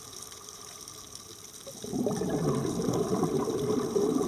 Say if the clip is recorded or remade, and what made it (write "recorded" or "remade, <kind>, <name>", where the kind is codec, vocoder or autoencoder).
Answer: remade, vocoder, BigVGAN v2